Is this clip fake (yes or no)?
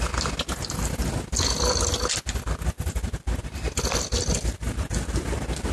no